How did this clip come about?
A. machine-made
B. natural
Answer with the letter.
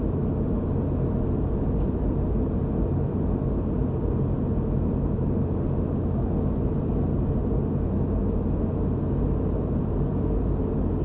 B